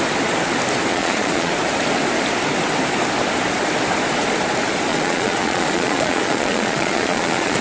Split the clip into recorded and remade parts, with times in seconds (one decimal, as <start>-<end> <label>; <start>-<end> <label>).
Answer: 0.0-0.9 recorded; 0.9-1.5 remade; 1.5-4.9 recorded; 4.9-7.6 remade